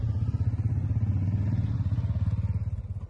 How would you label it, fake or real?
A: real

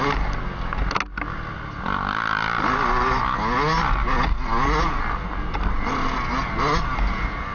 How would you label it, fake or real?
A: real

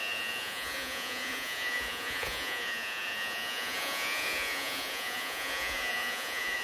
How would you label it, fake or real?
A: fake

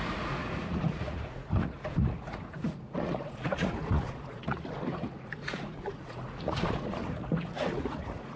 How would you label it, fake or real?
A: fake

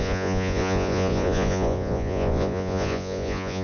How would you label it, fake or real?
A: fake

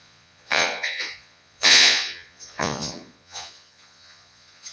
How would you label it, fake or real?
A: fake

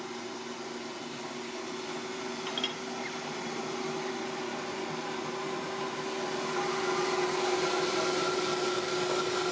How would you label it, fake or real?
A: real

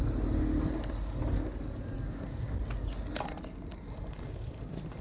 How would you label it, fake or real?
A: real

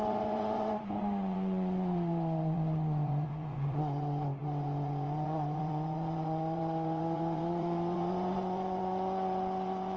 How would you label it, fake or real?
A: fake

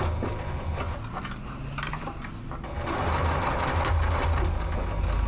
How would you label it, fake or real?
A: real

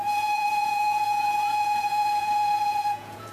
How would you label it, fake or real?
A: fake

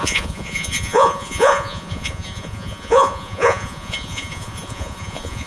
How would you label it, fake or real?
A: fake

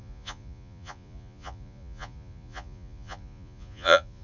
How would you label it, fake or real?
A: fake